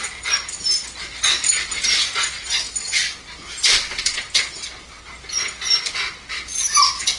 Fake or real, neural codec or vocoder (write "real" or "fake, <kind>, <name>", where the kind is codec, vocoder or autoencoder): real